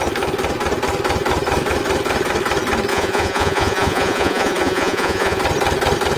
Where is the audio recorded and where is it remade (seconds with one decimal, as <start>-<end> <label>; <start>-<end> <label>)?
0.0-2.9 recorded; 2.9-5.4 remade; 5.4-6.2 recorded